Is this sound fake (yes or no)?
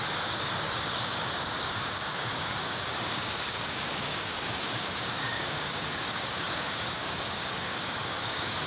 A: yes